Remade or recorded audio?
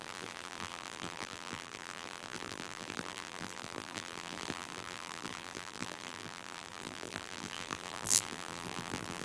remade